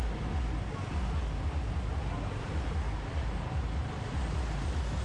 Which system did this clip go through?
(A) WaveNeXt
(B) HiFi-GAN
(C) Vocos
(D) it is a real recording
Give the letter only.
D